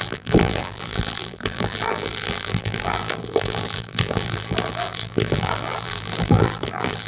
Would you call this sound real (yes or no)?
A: no